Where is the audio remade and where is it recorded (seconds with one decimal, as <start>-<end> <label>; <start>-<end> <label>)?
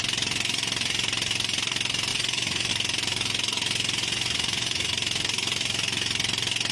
0.0-2.1 recorded; 2.1-2.7 remade; 2.7-4.0 recorded; 4.0-4.9 remade; 4.9-6.7 recorded